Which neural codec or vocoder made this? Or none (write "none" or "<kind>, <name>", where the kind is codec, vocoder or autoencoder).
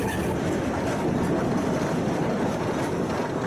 vocoder, BigVGAN v2